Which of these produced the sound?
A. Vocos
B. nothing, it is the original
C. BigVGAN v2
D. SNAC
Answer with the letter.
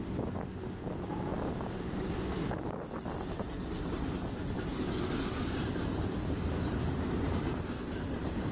B